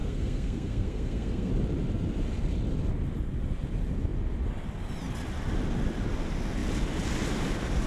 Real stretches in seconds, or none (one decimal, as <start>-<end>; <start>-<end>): 1.5-7.9